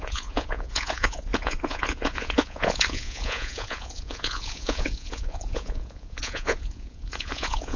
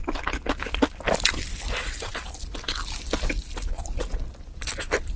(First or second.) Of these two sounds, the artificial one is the first